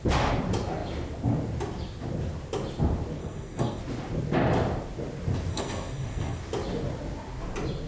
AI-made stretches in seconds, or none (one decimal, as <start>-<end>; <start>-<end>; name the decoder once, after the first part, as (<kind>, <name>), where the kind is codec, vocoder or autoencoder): 3.2-3.8 (codec, SNAC); 5.5-6.4